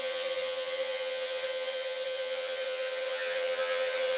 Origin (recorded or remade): remade